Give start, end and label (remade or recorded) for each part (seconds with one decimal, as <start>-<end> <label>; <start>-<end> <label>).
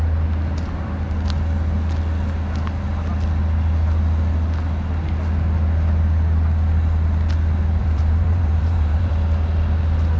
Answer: 0.0-7.8 recorded; 7.8-9.1 remade; 9.1-10.2 recorded